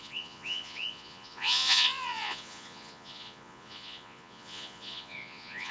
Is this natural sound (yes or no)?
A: no